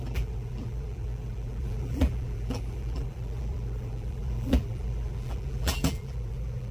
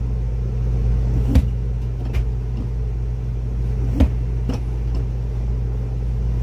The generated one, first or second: first